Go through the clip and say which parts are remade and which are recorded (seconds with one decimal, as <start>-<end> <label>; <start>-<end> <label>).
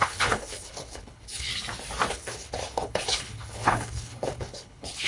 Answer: 0.0-1.5 remade; 1.5-2.1 recorded; 2.1-5.1 remade